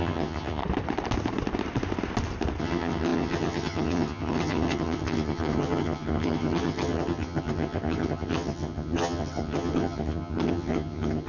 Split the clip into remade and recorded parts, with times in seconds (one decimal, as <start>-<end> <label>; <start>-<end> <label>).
0.0-0.6 remade; 0.6-2.6 recorded; 2.6-11.3 remade